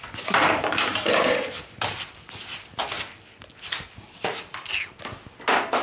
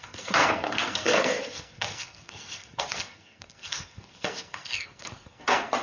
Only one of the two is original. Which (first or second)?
first